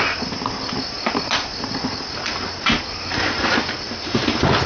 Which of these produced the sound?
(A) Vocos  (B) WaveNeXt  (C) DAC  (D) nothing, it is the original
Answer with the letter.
D